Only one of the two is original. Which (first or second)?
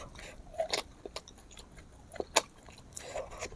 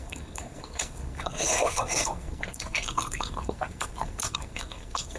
first